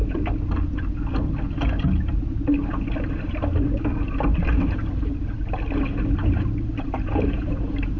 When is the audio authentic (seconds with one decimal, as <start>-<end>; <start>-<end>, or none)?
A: 0.0-6.2